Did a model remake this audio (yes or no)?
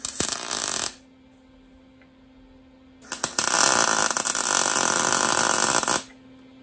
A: no